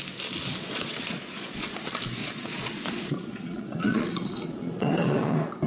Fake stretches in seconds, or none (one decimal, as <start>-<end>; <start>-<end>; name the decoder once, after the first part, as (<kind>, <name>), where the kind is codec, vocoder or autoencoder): 0.6-1.8 (vocoder, Vocos); 2.2-5.7